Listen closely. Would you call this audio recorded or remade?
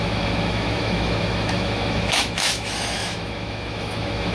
remade